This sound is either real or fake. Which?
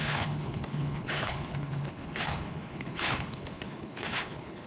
fake